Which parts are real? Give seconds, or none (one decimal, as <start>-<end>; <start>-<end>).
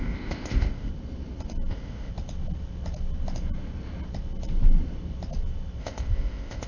0.9-1.7; 2.1-5.8